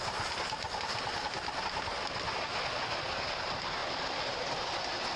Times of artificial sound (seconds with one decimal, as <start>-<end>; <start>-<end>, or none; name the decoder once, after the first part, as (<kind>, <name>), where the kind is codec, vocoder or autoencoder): 3.8-4.5 (vocoder, BigVGAN v2)